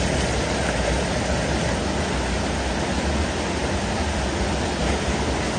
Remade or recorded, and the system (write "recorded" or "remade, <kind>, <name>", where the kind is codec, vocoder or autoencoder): recorded